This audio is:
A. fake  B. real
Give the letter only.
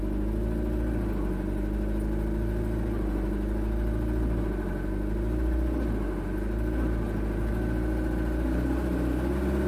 B